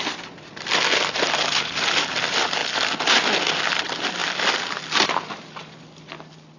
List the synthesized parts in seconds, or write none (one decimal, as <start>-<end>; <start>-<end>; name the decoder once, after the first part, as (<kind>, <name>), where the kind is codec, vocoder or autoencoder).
none